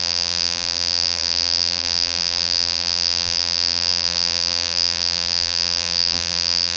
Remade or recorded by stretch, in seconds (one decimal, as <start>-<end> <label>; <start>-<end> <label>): 0.0-6.8 remade